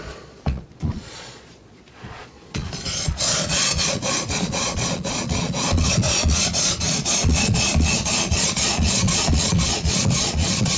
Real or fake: fake